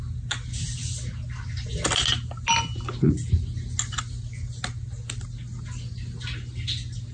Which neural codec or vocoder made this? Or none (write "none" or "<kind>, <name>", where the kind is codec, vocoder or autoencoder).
none